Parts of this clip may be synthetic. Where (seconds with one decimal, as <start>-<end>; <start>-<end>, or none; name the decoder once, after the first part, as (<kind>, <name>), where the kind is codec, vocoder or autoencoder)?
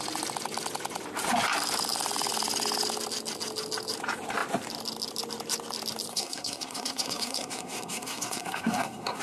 6.1-9.2 (codec, SNAC)